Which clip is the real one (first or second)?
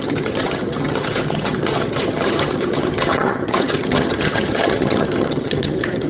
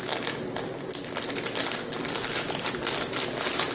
second